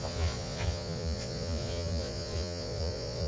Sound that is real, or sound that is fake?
fake